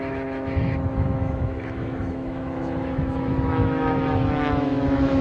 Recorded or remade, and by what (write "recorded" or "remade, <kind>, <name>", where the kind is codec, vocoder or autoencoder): remade, autoencoder, DAC-VAE